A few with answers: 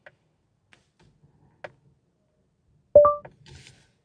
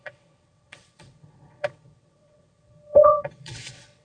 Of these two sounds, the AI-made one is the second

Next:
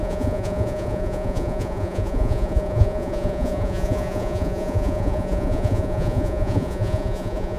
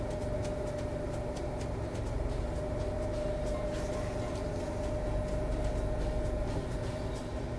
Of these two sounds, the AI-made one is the first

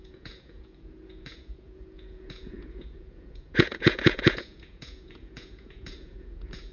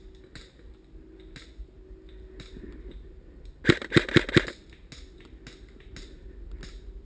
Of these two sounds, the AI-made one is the first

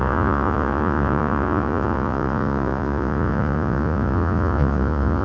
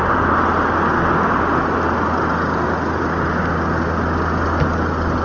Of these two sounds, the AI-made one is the first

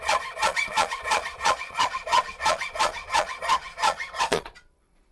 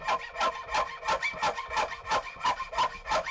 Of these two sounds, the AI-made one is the first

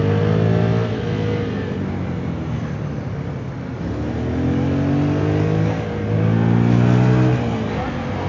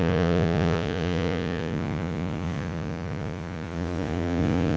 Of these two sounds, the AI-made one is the second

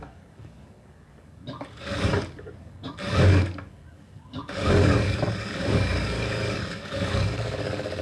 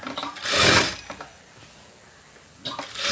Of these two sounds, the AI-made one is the first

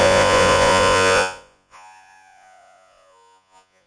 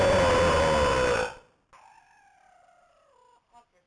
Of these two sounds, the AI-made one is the first